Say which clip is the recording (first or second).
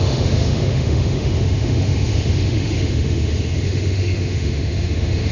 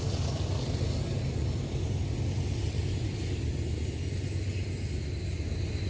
second